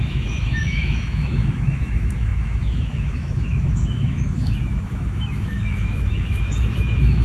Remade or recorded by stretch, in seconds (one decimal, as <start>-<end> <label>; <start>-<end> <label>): 0.0-7.2 remade